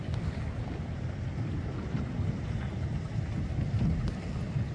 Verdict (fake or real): real